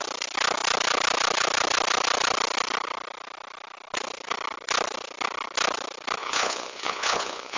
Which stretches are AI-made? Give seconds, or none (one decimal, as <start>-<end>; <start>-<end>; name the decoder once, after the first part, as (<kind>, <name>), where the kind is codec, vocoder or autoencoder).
6.2-7.6 (vocoder, Vocos)